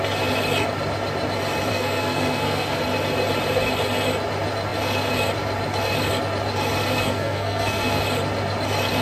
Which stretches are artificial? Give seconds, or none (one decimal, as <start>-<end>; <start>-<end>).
1.7-2.8; 7.0-8.0